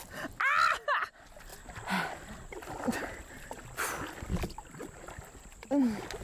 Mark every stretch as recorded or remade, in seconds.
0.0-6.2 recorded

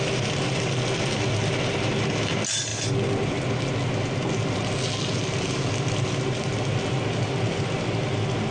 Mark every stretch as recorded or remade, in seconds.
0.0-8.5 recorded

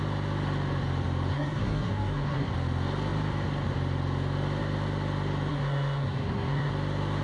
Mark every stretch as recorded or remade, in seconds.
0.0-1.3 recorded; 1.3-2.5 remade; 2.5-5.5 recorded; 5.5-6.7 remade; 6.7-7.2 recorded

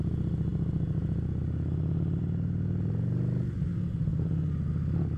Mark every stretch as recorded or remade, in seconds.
0.0-5.2 recorded

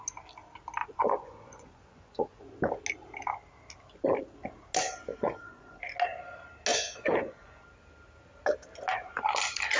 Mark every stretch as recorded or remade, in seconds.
0.0-0.8 recorded; 0.8-2.4 remade; 2.4-5.1 recorded; 5.1-5.9 remade; 5.9-6.7 recorded; 6.7-7.6 remade; 7.6-9.8 recorded

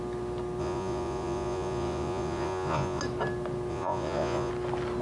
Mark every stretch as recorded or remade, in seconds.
0.0-0.6 recorded; 0.6-3.0 remade; 3.0-3.7 recorded; 3.7-4.5 remade; 4.5-5.0 recorded

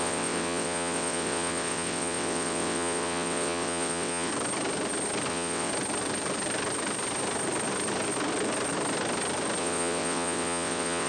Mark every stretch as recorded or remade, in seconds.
0.0-4.3 remade; 4.3-5.3 recorded; 5.3-5.7 remade; 5.7-9.6 recorded; 9.6-11.1 remade